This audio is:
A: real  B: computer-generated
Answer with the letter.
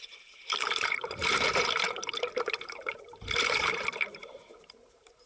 B